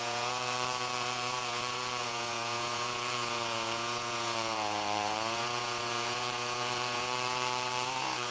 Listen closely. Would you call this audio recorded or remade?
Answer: remade